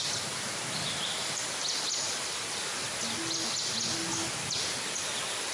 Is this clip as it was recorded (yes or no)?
yes